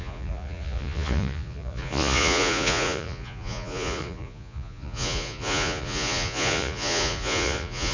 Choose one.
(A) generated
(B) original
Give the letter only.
A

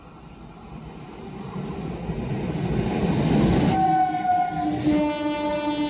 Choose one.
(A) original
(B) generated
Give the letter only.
A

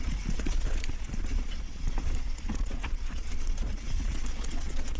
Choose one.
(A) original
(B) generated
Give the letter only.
B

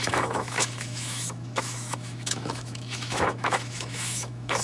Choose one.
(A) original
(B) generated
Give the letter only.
B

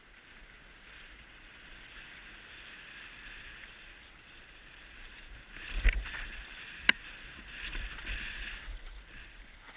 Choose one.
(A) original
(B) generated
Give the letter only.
B